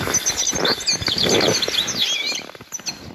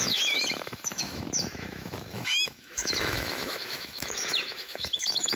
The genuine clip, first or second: first